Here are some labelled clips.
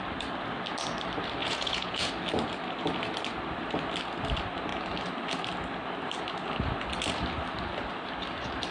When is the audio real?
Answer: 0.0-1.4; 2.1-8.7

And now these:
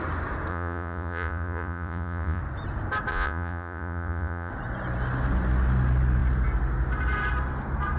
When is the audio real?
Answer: 0.0-0.5; 2.4-3.1; 4.5-8.0

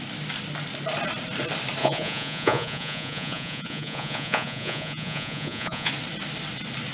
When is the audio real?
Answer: 0.0-1.8; 5.9-6.9

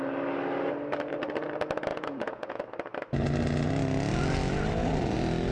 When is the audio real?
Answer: 0.0-1.9; 2.6-5.5

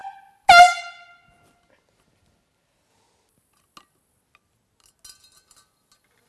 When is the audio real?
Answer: 0.0-6.3

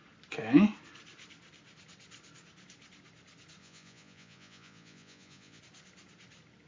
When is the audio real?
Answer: 0.0-3.6; 5.6-6.7